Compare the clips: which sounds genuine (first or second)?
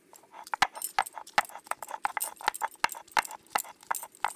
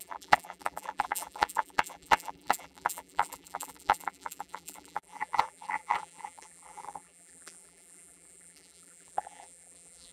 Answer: first